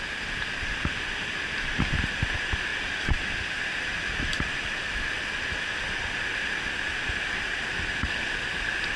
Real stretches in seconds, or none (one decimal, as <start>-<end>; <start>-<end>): 0.0-2.7; 3.2-9.0